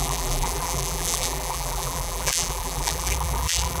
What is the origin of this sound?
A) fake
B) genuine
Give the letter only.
A